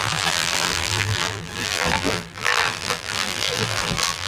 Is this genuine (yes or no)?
no